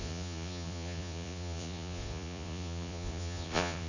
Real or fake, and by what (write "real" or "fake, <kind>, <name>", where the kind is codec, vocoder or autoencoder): fake, vocoder, Vocos